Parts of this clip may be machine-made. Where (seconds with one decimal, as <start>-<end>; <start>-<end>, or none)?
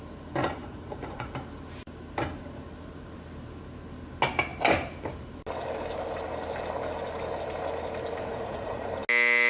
0.4-1.3; 8.3-8.9